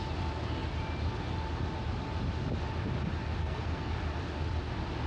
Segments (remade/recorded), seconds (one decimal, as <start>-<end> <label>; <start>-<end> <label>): 0.0-3.4 recorded; 3.4-3.9 remade; 3.9-5.1 recorded